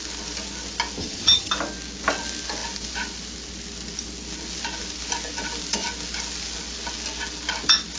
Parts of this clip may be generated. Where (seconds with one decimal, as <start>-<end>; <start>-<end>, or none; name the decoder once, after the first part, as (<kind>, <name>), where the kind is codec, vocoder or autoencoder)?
1.0-1.5 (vocoder, HiFi-GAN)